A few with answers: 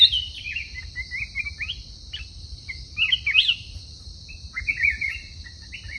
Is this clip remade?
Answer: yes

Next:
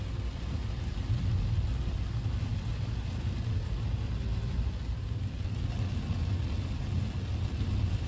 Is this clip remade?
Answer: no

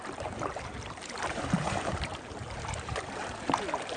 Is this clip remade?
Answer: yes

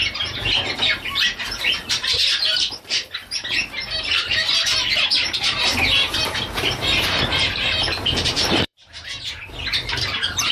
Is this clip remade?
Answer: yes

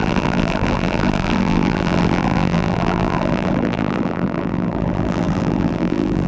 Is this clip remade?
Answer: yes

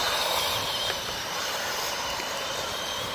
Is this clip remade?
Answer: yes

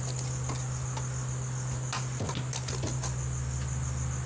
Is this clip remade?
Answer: no